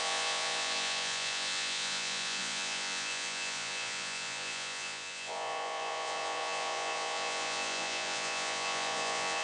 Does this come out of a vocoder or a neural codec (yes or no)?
yes